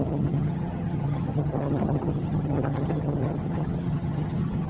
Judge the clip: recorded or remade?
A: remade